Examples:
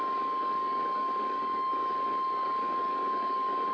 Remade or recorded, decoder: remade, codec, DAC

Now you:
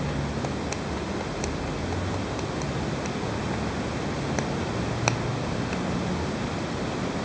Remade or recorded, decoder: recorded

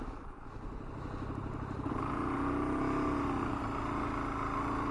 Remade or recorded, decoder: recorded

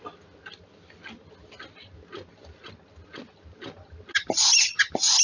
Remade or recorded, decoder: recorded